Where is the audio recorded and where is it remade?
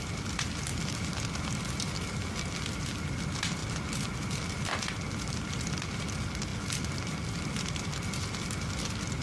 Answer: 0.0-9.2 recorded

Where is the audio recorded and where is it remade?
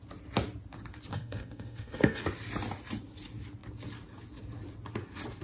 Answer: 0.0-1.1 recorded; 1.1-2.2 remade; 2.2-5.4 recorded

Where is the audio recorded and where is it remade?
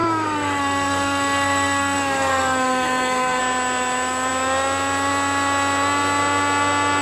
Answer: 0.0-3.4 remade; 3.4-7.0 recorded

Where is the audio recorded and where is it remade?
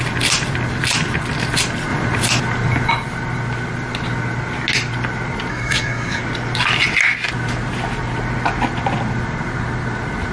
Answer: 0.0-5.5 recorded; 5.5-6.2 remade; 6.2-10.3 recorded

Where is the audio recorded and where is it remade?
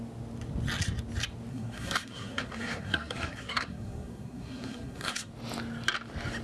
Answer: 0.0-1.5 recorded; 1.5-5.3 remade; 5.3-6.4 recorded